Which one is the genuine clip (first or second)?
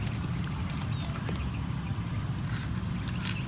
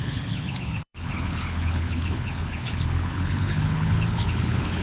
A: first